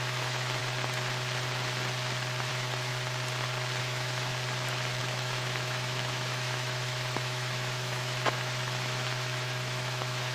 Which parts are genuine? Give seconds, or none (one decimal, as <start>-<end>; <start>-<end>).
0.6-2.5; 2.9-3.8; 4.3-5.0